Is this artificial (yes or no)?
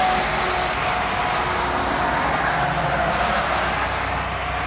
no